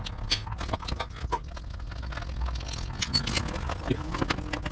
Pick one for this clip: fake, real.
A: real